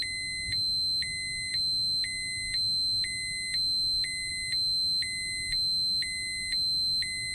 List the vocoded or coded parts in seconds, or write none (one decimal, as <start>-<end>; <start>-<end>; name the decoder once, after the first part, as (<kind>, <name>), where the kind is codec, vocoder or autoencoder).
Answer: none